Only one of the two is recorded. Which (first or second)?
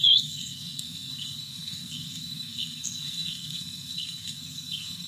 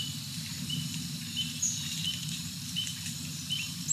second